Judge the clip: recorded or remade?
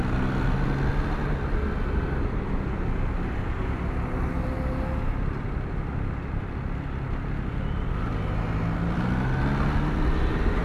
recorded